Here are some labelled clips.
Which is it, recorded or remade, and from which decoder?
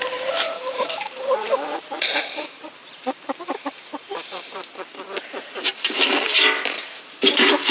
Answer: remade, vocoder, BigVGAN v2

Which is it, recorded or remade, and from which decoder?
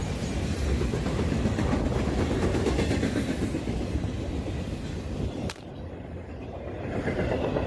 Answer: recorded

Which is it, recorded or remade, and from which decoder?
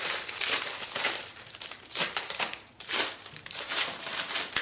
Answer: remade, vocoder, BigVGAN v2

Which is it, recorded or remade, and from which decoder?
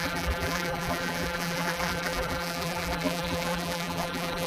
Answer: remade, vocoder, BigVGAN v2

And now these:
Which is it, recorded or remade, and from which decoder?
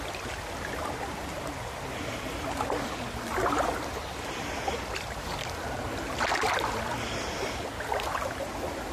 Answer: recorded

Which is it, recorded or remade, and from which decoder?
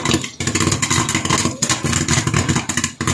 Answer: recorded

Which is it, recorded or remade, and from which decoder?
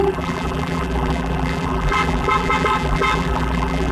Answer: remade, vocoder, BigVGAN v2